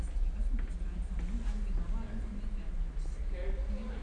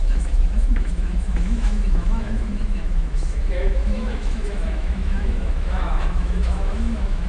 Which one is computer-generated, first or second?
second